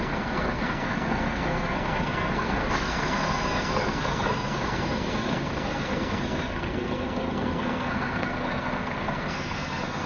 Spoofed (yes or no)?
yes